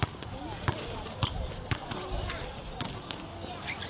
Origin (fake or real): real